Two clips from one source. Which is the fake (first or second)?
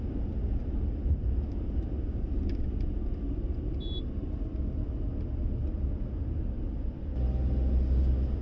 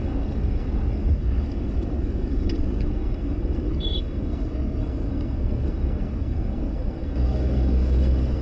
second